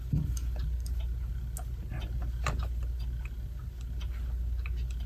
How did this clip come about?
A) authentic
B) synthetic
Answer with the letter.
A